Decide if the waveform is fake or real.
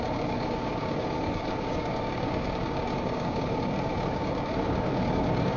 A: fake